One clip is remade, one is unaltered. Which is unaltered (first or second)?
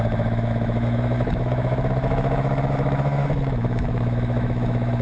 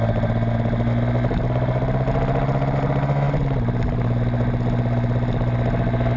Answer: second